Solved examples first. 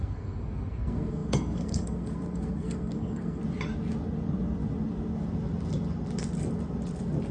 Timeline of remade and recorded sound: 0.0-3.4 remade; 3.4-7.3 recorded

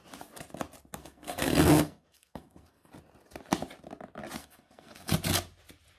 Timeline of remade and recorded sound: 0.0-1.0 recorded; 1.0-2.9 remade; 2.9-4.4 recorded; 4.4-5.1 remade; 5.1-6.0 recorded

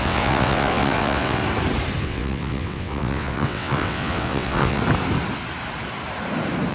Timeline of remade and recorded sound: 0.0-1.4 remade; 1.4-2.0 recorded; 2.0-4.8 remade; 4.8-6.7 recorded

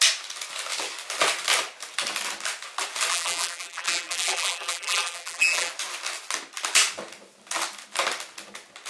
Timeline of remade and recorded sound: 0.0-3.1 recorded; 3.1-5.7 remade; 5.7-8.9 recorded